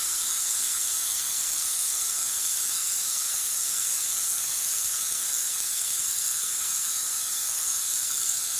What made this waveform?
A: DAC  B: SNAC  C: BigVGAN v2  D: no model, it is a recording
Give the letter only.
B